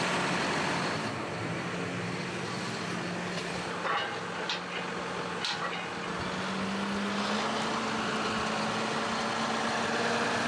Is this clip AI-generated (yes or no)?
no